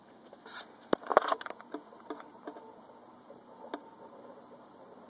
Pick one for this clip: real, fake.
real